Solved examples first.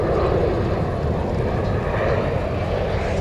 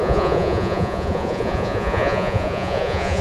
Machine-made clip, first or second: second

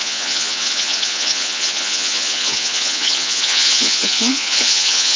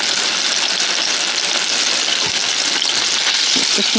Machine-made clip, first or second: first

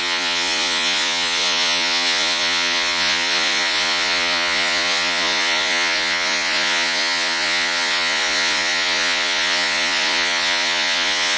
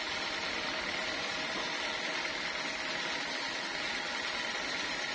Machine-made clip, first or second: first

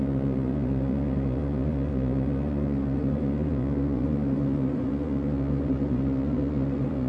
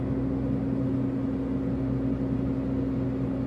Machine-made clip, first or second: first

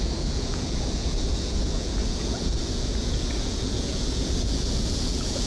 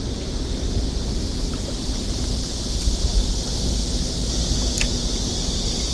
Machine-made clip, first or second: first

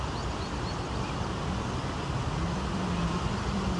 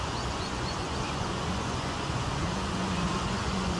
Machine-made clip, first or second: second